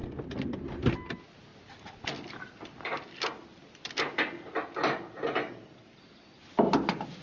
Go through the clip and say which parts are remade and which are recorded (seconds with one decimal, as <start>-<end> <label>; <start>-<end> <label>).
0.0-7.2 recorded